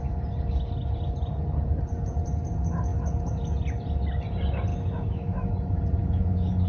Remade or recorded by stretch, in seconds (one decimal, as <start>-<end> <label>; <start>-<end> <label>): 0.0-4.7 recorded; 4.7-5.5 remade; 5.5-6.0 recorded; 6.0-6.7 remade